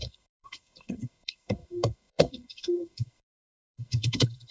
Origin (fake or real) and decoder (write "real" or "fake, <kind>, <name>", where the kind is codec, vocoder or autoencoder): fake, codec, SNAC